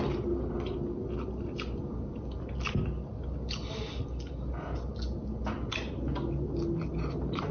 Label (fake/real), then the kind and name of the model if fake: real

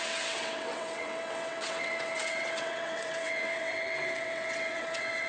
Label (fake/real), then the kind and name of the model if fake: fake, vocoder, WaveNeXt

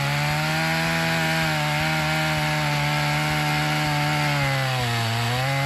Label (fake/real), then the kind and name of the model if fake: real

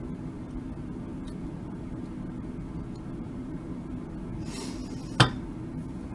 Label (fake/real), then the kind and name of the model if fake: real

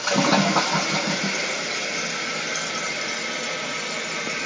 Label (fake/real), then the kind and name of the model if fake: real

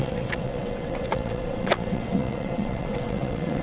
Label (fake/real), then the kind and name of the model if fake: fake, vocoder, WaveNeXt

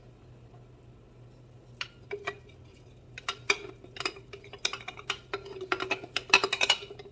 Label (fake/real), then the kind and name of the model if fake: real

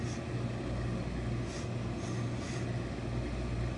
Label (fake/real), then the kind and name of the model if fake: real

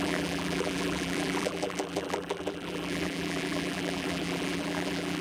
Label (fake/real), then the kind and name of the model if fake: fake, vocoder, BigVGAN v2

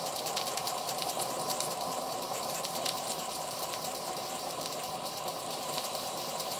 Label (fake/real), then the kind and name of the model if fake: fake, vocoder, BigVGAN v2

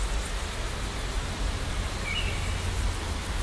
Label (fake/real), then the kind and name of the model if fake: real